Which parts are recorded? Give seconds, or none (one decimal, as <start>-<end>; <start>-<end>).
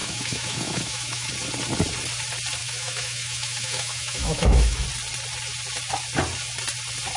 1.3-2.6; 4.8-7.2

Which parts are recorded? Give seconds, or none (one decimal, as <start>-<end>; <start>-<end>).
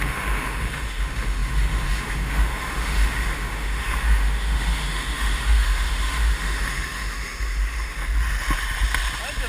8.0-9.5